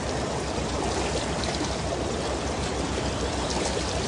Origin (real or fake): fake